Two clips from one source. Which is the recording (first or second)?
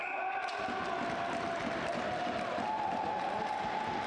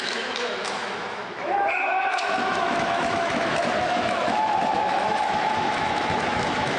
first